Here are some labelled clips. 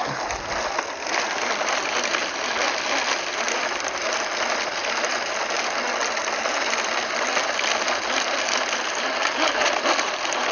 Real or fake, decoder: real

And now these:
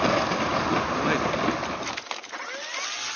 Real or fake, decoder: real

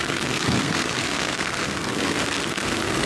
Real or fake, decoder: fake, codec, SNAC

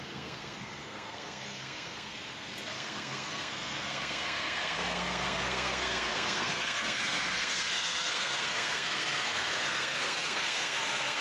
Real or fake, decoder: fake, codec, SNAC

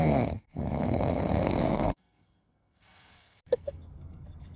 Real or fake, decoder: fake, codec, SNAC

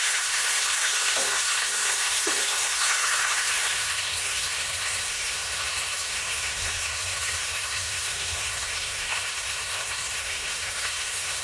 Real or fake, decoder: fake, codec, SNAC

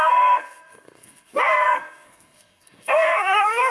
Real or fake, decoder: fake, codec, SNAC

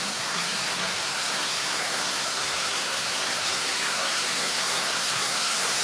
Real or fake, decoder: fake, codec, SNAC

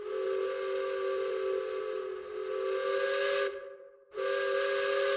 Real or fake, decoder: real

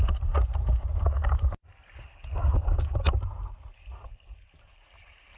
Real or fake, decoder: real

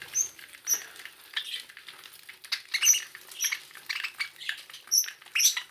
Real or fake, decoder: real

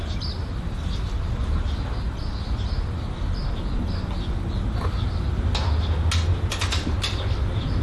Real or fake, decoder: real